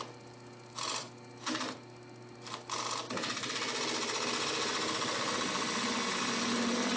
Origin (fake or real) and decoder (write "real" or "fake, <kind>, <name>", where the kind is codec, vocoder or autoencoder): real